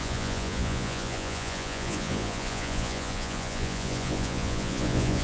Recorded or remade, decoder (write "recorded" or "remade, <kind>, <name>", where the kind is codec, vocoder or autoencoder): remade, vocoder, Vocos